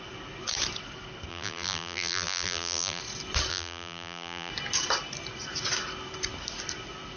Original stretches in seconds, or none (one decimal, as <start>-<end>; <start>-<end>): 0.0-1.3; 3.0-3.5; 4.5-7.2